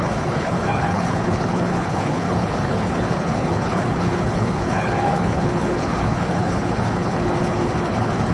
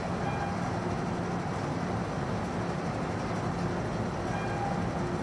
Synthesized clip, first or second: first